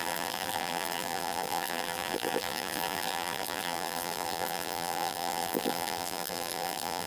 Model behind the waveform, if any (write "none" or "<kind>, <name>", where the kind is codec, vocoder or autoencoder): vocoder, BigVGAN v2